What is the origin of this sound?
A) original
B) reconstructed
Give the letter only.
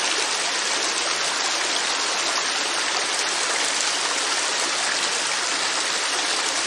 A